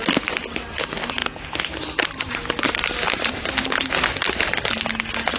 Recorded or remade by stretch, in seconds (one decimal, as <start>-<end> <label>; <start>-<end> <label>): 0.0-5.4 recorded